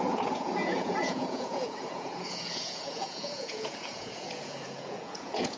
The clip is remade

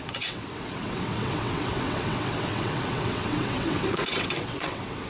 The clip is remade